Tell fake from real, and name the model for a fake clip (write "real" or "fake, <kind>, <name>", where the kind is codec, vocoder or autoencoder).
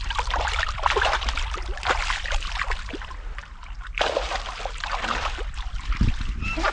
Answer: fake, vocoder, BigVGAN v2